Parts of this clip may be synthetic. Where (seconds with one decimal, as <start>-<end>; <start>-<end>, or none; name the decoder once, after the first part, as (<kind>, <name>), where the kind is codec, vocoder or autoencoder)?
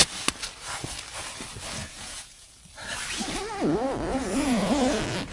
1.8-2.6 (vocoder, Vocos); 4.1-4.7